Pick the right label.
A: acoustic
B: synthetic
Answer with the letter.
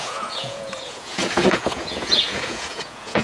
B